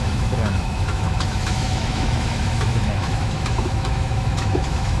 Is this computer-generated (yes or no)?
yes